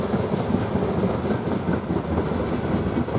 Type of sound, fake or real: real